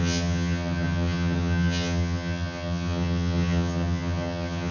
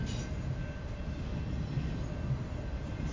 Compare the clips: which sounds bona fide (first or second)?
second